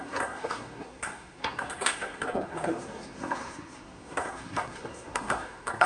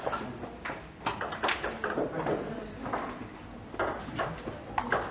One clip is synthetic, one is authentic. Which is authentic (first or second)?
second